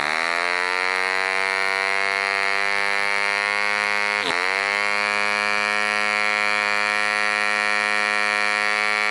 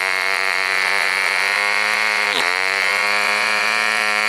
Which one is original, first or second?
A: first